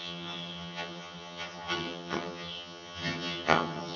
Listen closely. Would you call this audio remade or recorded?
remade